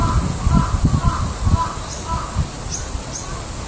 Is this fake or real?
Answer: real